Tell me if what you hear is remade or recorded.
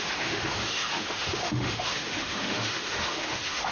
remade